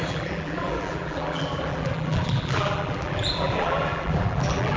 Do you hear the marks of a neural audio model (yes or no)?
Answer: yes